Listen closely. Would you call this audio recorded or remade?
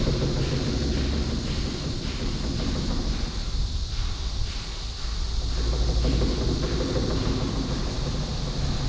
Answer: recorded